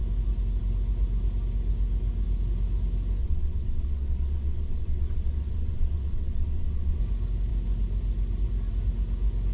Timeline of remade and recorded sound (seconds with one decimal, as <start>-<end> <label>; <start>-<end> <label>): 0.0-3.2 recorded; 3.2-7.0 remade; 7.0-9.5 recorded